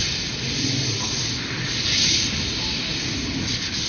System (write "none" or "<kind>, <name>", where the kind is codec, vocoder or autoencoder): none